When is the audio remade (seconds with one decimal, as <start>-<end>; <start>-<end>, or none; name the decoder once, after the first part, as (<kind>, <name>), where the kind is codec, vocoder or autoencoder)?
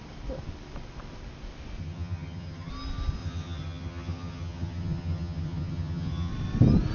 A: 1.8-2.7 (vocoder, HiFi-GAN); 3.2-6.3